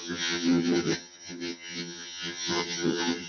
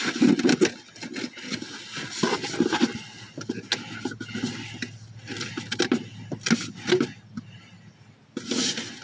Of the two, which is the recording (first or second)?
second